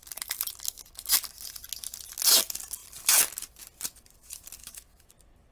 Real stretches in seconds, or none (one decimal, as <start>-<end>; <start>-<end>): 0.0-4.6; 5.1-5.5